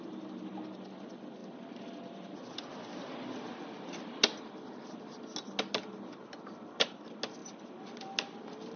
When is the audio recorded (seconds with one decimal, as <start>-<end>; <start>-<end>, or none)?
0.0-8.8